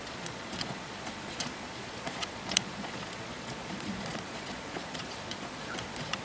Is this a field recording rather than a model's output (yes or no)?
no